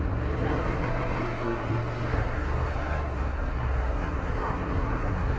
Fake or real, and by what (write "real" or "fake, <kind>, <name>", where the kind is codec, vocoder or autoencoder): fake, codec, SNAC